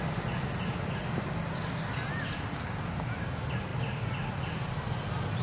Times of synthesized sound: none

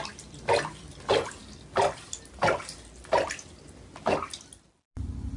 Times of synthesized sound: none

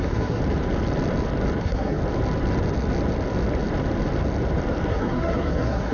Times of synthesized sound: 0.0-0.4 (codec, SNAC); 1.6-2.0; 4.9-5.9

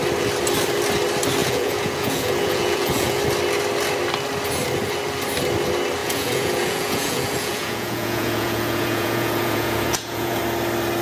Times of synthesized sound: 1.4-3.2 (vocoder, Vocos); 6.0-10.4

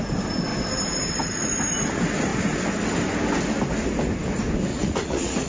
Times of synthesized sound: 4.7-5.5 (vocoder, Vocos)